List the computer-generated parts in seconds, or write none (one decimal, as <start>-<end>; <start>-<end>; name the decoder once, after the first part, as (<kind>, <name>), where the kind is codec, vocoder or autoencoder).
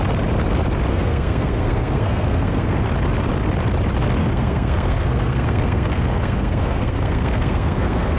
0.9-2.8 (codec, SNAC); 4.2-8.2